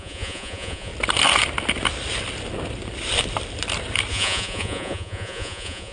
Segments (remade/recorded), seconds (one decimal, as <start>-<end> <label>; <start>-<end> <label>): 0.0-0.9 remade; 0.9-4.1 recorded; 4.1-5.9 remade

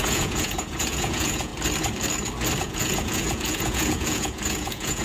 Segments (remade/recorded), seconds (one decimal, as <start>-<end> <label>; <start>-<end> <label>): 0.0-1.5 remade; 1.5-2.6 recorded; 2.6-5.0 remade